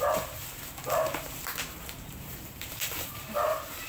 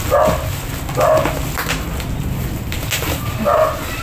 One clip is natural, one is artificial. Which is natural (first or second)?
second